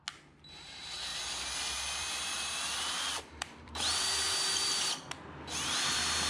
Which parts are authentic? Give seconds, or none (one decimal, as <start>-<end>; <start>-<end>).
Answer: 0.0-1.1; 4.9-6.3